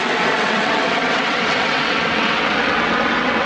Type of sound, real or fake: fake